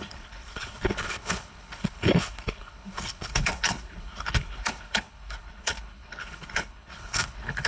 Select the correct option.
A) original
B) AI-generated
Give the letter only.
B